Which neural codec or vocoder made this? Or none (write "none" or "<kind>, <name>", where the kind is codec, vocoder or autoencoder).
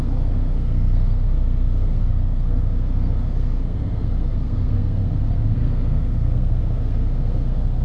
codec, SNAC